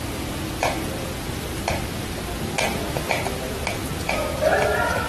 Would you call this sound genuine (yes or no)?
yes